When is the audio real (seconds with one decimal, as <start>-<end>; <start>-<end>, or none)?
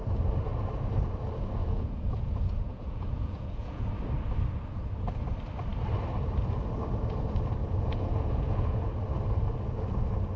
0.0-1.6; 3.9-7.6; 8.9-10.4